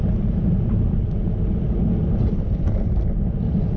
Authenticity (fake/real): real